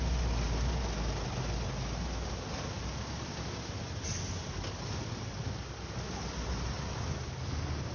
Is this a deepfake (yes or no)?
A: no